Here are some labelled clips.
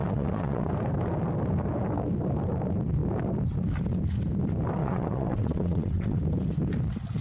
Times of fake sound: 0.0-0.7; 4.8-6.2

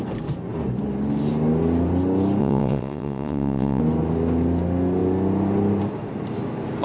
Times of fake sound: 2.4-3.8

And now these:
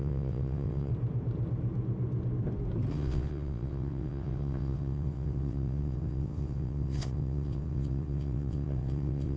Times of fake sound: 0.0-0.9; 2.9-9.4

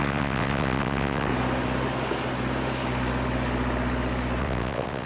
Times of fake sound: 0.0-1.3; 4.4-5.1